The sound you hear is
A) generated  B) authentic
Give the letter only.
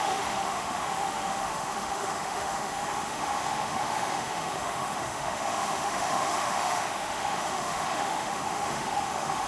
A